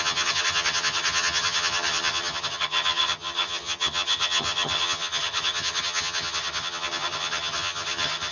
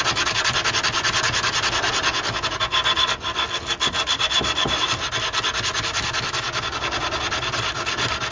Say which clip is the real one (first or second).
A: second